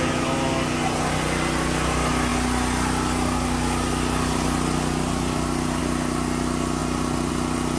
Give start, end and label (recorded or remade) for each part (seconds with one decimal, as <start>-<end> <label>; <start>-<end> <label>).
0.0-7.8 recorded